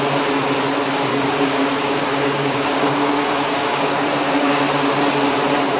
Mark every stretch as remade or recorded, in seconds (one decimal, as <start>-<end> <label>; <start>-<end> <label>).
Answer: 0.0-1.1 recorded; 1.1-4.6 remade; 4.6-5.8 recorded